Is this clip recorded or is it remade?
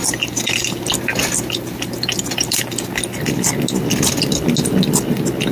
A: recorded